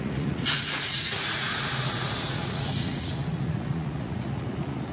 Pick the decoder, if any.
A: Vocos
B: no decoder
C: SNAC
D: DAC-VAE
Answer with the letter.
A